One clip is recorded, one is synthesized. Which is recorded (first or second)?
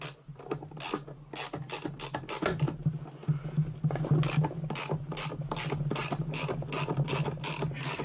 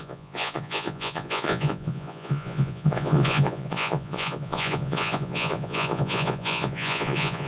first